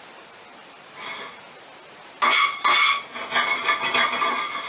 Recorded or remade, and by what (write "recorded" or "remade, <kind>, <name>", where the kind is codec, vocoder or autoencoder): recorded